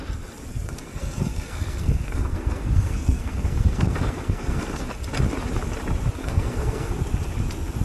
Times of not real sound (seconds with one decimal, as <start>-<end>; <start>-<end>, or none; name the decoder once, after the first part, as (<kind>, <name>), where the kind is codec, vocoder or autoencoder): 0.5-4.9 (codec, SNAC); 6.2-6.9